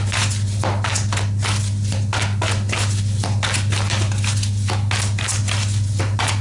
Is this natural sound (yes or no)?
yes